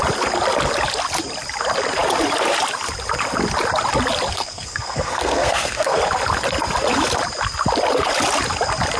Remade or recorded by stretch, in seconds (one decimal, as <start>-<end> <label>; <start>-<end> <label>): 0.0-4.3 recorded; 4.3-6.0 remade; 6.0-9.0 recorded